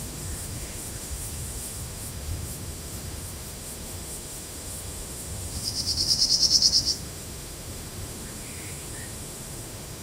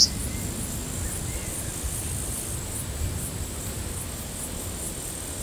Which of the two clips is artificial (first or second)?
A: first